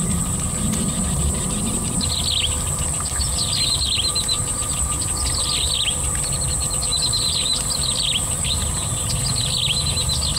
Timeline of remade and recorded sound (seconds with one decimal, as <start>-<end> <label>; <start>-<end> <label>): 0.0-6.9 recorded; 6.9-8.7 remade; 8.7-10.4 recorded